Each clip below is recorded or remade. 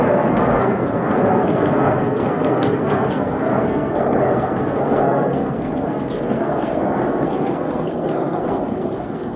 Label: remade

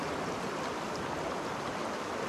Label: recorded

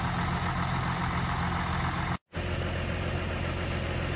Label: recorded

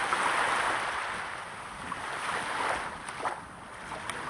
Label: recorded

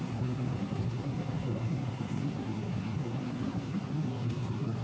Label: remade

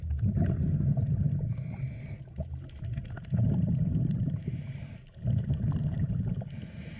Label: recorded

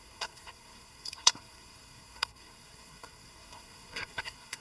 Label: remade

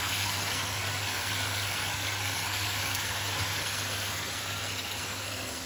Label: remade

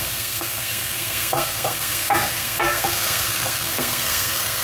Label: remade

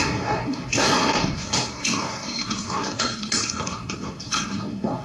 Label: remade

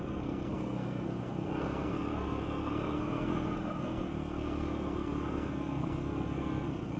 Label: remade